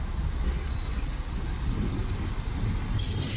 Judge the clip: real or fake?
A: real